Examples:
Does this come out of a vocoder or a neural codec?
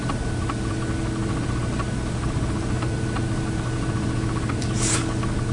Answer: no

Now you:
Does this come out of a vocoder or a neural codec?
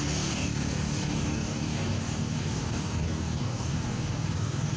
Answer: yes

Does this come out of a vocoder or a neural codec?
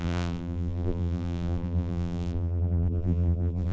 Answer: yes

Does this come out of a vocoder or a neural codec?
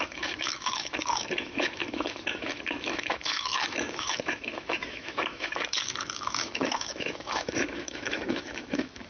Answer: yes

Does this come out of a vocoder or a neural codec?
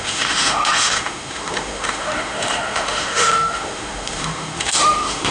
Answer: yes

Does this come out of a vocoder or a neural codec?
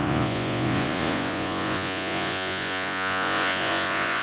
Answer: yes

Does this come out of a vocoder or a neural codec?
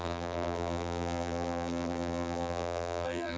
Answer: yes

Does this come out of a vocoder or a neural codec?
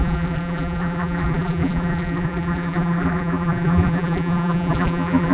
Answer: yes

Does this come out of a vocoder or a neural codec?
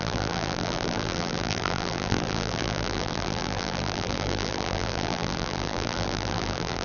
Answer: yes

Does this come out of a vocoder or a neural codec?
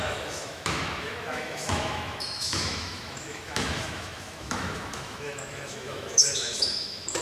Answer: yes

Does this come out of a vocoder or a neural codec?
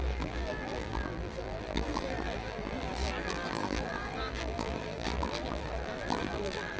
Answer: yes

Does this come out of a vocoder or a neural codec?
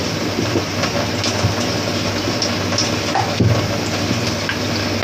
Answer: no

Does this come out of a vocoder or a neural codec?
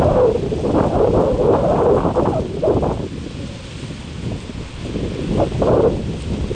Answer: no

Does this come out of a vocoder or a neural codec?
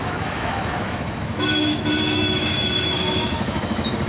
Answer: yes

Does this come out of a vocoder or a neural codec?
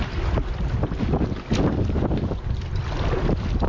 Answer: no